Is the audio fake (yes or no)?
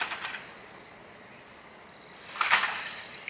no